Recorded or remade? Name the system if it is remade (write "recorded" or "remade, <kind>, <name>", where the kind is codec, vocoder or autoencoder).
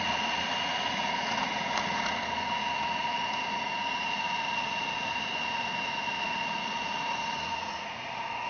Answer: remade, vocoder, Vocos